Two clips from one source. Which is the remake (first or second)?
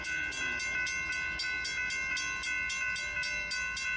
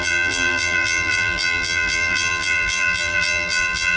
second